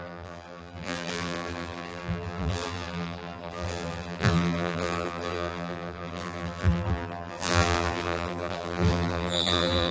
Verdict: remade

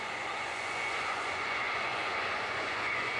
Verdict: remade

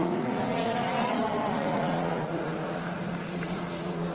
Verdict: remade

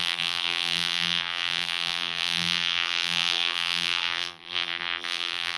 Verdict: remade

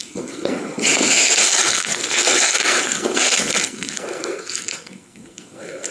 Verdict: remade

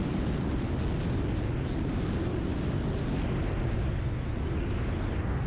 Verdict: recorded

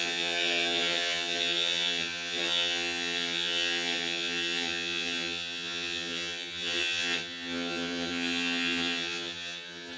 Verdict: remade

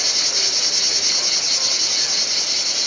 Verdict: recorded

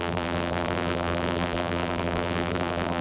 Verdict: remade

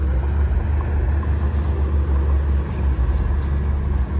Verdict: recorded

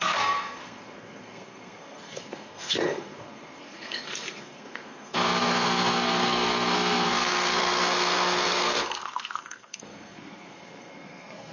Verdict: remade